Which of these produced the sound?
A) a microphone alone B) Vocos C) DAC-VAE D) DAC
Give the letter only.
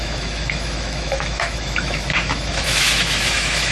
C